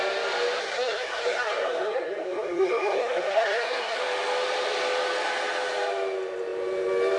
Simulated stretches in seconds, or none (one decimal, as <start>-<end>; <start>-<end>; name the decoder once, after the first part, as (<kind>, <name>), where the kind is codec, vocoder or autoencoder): 0.6-4.0 (codec, SNAC)